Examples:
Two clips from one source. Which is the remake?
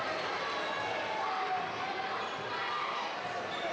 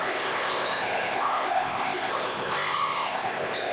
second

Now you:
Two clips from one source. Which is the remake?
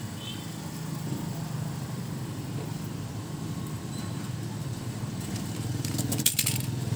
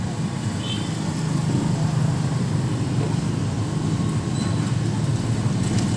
first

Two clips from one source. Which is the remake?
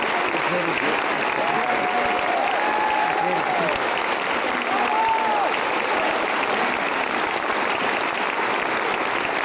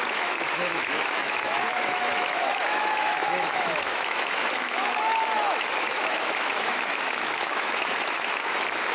second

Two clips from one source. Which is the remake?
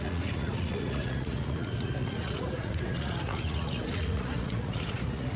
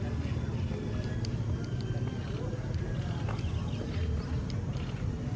first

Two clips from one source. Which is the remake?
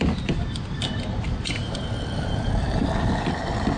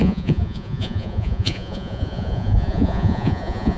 second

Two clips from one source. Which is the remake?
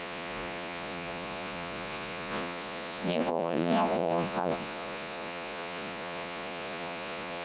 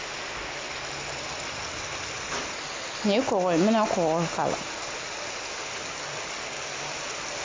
first